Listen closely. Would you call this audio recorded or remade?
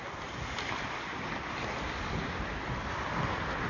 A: recorded